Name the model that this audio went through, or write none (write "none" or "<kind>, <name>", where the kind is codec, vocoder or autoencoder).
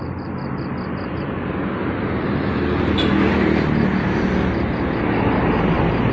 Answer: none